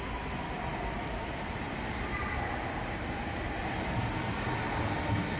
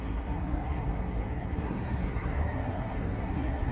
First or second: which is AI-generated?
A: second